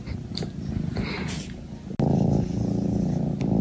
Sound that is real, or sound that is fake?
real